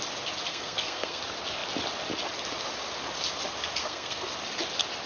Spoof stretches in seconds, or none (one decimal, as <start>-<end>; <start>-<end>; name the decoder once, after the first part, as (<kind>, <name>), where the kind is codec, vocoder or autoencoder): 0.5-1.2 (codec, SNAC); 3.8-4.3